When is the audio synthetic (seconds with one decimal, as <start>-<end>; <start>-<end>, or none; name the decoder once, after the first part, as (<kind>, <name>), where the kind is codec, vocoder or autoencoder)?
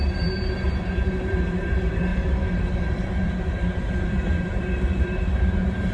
0.0-5.9 (vocoder, BigVGAN v2)